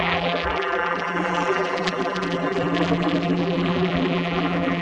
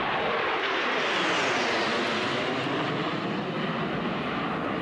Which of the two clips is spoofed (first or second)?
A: first